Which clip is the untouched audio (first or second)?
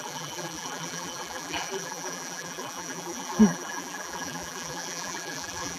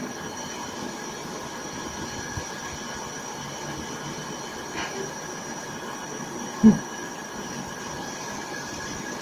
second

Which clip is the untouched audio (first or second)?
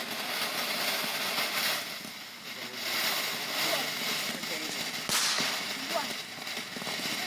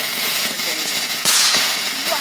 first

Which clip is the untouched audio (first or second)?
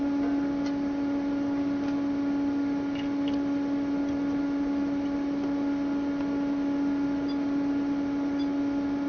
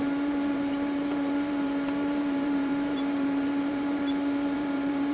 first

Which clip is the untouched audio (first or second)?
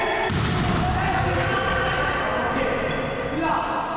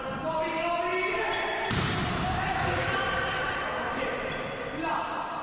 first